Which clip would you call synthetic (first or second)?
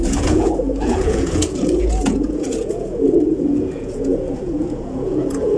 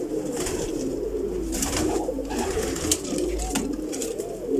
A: first